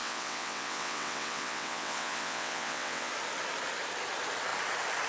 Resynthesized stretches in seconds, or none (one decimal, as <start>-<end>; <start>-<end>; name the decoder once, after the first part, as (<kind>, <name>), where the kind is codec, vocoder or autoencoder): 0.0-3.1 (vocoder, WaveNeXt)

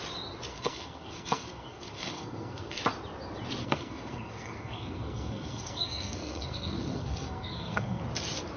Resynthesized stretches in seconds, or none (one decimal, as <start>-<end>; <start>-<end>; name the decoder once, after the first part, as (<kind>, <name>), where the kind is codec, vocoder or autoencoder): 0.5-2.8 (codec, SNAC); 3.6-8.0

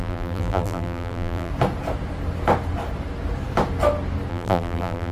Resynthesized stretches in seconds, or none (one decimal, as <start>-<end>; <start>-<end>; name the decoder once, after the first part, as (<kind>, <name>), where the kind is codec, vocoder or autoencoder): 0.0-1.5 (vocoder, BigVGAN v2); 4.3-5.1